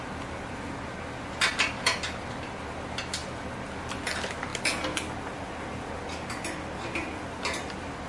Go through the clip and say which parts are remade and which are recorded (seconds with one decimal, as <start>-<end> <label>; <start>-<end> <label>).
0.0-8.1 recorded